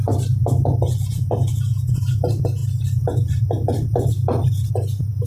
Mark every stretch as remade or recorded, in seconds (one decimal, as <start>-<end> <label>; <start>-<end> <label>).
0.0-5.3 recorded